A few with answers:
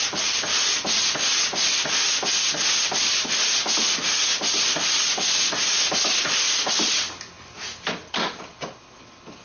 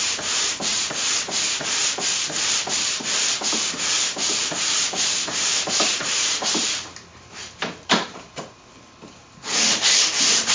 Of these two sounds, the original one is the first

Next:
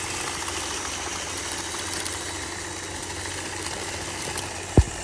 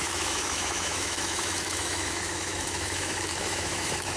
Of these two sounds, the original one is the first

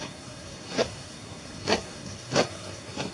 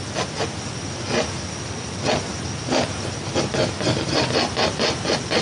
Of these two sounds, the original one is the second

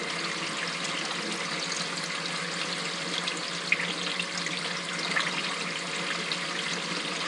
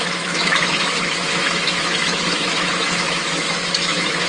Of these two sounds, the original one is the first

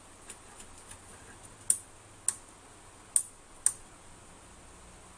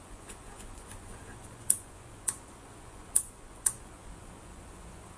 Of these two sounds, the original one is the first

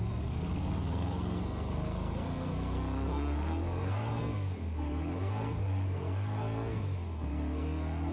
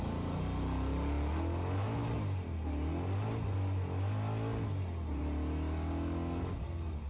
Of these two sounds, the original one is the second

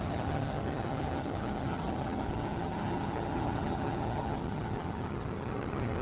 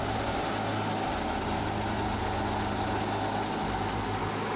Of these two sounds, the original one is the second